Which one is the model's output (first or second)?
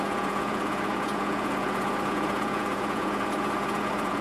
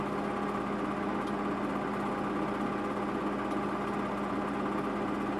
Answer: first